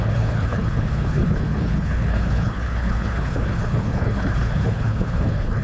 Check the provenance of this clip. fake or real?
fake